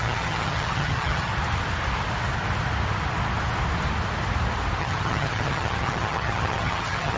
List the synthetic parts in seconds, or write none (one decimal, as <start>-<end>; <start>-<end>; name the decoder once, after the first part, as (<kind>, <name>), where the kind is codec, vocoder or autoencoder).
0.0-1.3 (vocoder, HiFi-GAN); 4.8-7.2